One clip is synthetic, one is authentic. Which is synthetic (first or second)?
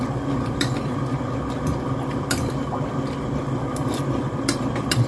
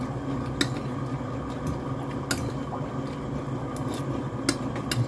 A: first